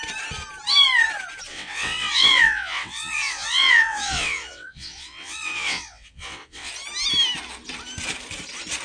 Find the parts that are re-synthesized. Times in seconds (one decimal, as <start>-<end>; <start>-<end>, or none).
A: 1.5-6.7